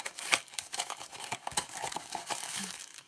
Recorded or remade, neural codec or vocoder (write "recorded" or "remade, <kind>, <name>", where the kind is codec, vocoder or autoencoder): remade, codec, DAC